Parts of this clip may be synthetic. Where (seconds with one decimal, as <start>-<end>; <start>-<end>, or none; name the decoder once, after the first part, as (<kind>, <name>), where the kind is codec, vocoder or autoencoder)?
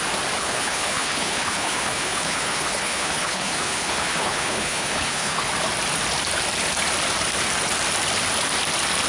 0.4-5.5 (codec, HILCodec)